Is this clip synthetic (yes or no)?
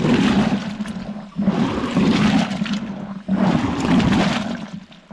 no